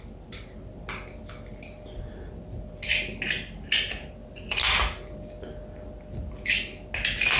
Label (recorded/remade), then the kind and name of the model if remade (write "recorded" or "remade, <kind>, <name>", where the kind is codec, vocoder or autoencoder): recorded